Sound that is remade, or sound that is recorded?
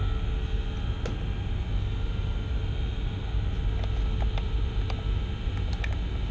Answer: recorded